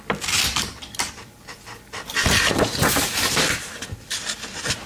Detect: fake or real fake